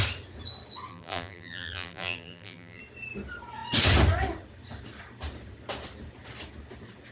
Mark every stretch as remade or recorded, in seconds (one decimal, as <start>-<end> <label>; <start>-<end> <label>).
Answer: 0.0-0.9 recorded; 0.9-2.8 remade; 2.8-7.1 recorded